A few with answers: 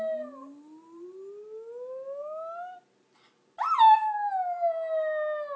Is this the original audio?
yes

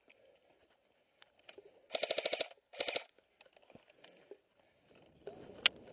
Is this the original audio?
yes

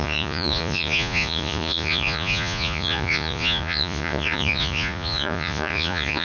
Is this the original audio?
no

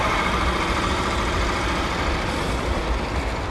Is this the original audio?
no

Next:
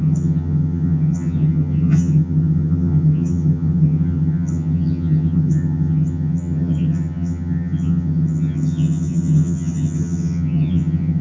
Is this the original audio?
no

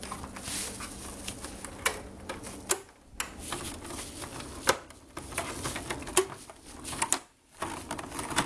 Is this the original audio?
yes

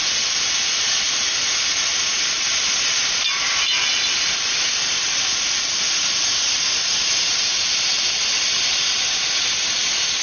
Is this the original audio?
yes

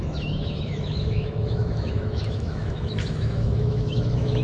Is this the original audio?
no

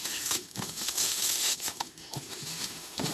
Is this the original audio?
no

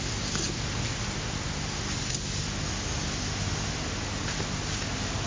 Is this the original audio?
yes